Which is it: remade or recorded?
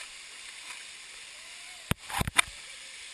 recorded